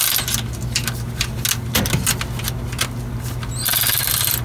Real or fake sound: real